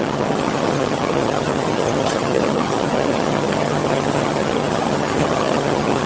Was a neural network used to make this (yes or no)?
yes